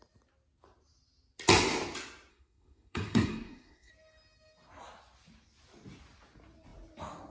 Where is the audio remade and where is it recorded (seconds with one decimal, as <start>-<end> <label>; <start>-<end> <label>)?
0.0-2.3 recorded; 2.3-3.9 remade; 3.9-7.3 recorded